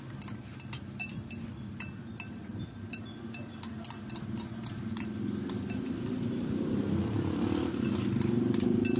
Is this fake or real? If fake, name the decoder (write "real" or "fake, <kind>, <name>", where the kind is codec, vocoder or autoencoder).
real